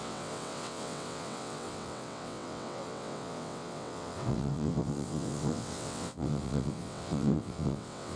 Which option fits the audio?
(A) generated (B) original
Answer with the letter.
A